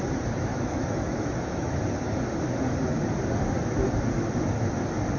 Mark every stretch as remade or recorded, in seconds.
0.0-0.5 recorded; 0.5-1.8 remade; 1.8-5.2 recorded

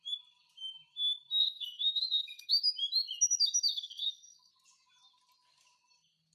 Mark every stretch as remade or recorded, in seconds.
0.0-1.4 recorded; 1.4-2.5 remade; 2.5-3.7 recorded; 3.7-4.5 remade; 4.5-6.3 recorded

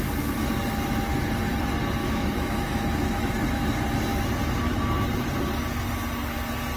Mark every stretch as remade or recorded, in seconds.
0.0-2.0 recorded; 2.0-3.2 remade; 3.2-6.8 recorded

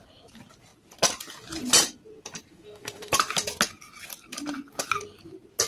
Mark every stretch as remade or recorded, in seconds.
0.0-2.5 recorded; 2.5-3.1 remade; 3.1-5.7 recorded

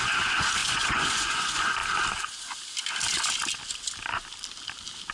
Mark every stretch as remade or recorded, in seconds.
0.0-1.8 remade; 1.8-5.1 recorded

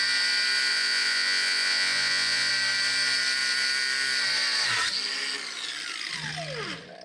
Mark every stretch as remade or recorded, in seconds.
0.0-0.7 recorded; 0.7-2.5 remade; 2.5-7.0 recorded

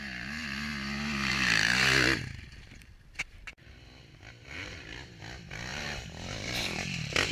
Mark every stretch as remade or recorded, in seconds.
0.0-3.1 recorded; 3.1-5.2 remade; 5.2-5.7 recorded; 5.7-7.3 remade